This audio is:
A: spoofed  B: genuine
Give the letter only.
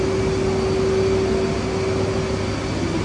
B